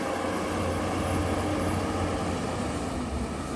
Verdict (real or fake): real